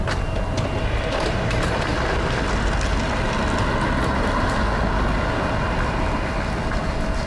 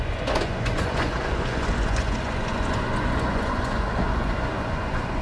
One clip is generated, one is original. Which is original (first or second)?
first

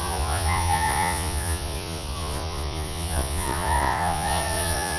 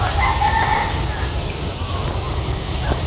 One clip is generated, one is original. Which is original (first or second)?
second